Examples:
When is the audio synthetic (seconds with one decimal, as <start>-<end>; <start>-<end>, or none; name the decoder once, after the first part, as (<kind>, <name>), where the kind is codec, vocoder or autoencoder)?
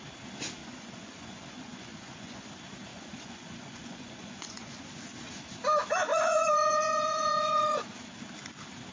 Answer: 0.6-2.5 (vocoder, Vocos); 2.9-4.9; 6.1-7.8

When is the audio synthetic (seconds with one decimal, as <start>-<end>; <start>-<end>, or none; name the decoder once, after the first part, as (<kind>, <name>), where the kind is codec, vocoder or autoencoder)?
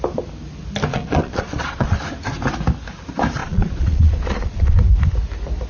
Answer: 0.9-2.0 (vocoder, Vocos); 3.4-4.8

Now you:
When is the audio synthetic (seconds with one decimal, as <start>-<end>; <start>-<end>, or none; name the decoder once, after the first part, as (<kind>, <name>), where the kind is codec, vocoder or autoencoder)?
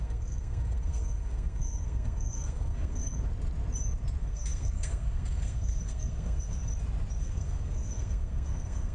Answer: 0.0-3.0 (codec, SNAC); 4.2-6.6; 7.2-8.9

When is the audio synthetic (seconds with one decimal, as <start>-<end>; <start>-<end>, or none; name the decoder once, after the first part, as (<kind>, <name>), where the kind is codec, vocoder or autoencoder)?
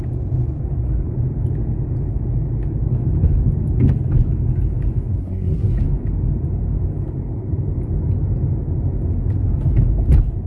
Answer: 5.2-5.8 (codec, SNAC)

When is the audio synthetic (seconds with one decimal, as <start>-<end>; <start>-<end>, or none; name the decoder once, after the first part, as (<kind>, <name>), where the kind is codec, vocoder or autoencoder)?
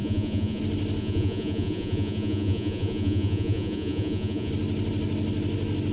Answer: 0.0-0.6 (vocoder, Vocos); 1.0-4.5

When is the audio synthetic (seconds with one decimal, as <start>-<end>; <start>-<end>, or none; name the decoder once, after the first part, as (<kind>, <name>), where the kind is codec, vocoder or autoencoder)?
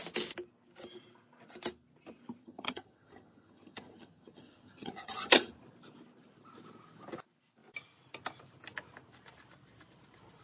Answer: 2.4-5.5 (vocoder, HiFi-GAN)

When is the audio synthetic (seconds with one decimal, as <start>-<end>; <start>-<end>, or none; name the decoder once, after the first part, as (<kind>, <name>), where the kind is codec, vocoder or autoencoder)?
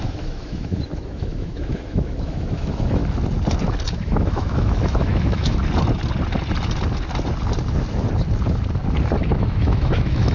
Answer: 0.0-3.0 (autoencoder, DAC-VAE); 3.9-5.6; 9.2-10.3